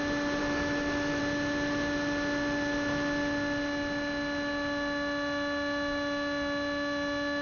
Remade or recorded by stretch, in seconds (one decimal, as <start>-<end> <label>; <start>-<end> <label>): 0.0-0.4 recorded; 0.4-1.2 remade; 1.2-7.4 recorded